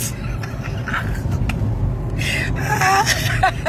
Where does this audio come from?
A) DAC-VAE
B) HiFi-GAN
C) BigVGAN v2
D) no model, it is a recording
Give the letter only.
D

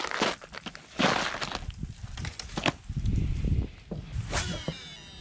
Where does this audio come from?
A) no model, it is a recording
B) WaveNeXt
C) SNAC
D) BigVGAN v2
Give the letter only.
A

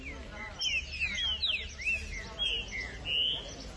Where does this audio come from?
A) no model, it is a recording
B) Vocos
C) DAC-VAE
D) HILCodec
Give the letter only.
A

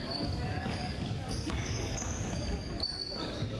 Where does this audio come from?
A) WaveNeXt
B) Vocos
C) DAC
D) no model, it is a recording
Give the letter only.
C